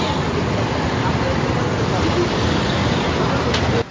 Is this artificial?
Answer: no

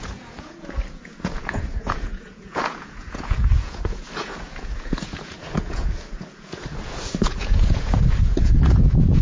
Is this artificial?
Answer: yes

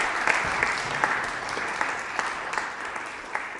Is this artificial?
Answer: no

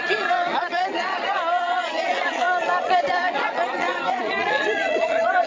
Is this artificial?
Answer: yes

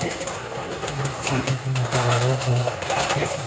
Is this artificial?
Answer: yes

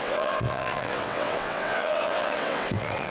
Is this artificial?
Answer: yes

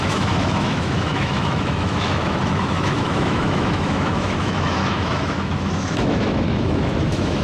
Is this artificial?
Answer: yes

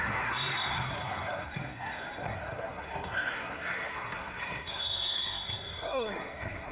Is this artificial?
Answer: yes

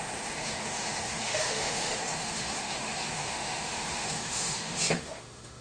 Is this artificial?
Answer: yes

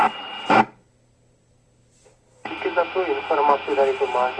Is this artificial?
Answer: no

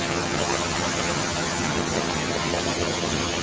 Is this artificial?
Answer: yes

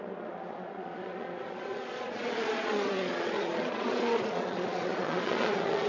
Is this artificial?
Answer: yes